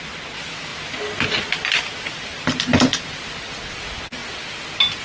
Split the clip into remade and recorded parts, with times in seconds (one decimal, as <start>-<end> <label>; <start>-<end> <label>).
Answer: 0.0-5.0 recorded